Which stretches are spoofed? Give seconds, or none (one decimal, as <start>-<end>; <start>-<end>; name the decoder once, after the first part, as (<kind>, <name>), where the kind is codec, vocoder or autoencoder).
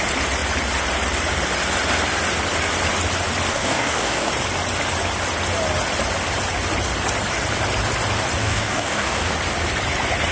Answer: 3.5-4.3 (codec, DAC); 8.4-9.3